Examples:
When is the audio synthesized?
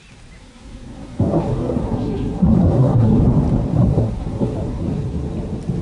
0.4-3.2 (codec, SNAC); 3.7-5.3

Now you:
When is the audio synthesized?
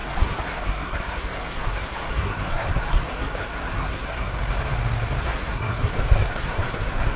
0.0-4.3 (codec, SNAC); 5.2-7.2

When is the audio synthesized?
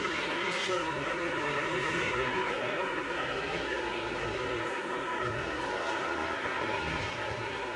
0.0-7.8 (codec, SNAC)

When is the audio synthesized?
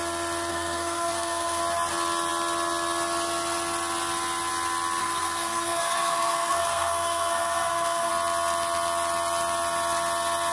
0.5-1.6 (codec, SNAC); 5.0-8.1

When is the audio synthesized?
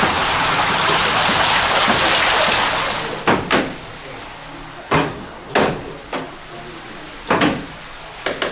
4.8-5.5 (codec, SNAC)